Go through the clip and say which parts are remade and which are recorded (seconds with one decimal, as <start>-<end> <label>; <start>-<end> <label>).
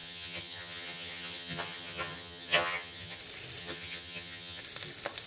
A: 0.0-3.2 remade; 3.2-3.6 recorded; 3.6-4.6 remade; 4.6-5.3 recorded